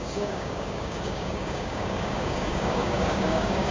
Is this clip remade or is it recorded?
remade